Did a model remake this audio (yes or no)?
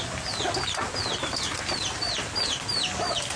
no